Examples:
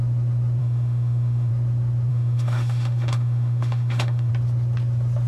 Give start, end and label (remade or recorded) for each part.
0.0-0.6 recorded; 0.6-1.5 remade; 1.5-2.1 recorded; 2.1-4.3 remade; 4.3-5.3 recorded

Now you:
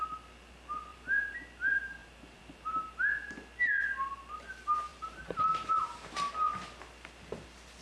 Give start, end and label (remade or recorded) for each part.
0.0-0.9 recorded; 0.9-1.4 remade; 1.4-2.0 recorded; 2.0-3.3 remade; 3.3-4.9 recorded; 4.9-6.3 remade; 6.3-7.8 recorded

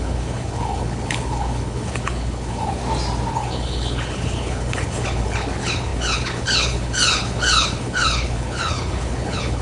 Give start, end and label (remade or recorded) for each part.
0.0-2.8 remade; 2.8-3.3 recorded; 3.3-9.6 remade

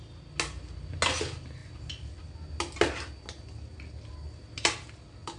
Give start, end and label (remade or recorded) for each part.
0.0-5.4 recorded